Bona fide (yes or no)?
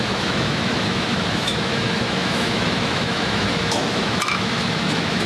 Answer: no